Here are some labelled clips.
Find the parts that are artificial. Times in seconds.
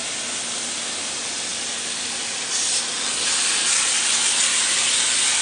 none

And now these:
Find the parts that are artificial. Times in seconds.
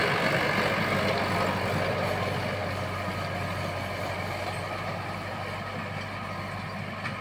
none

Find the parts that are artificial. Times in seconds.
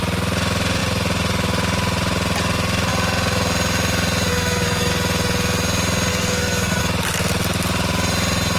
4.3-4.9 (codec, SNAC); 6.1-6.8